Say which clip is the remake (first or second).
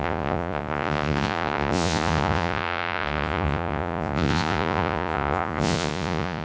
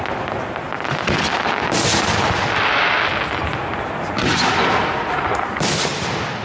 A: first